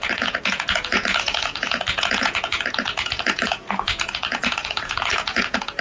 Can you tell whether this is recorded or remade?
remade